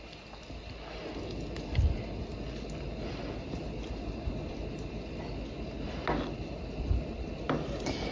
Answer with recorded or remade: recorded